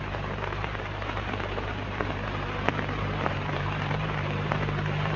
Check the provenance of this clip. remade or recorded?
remade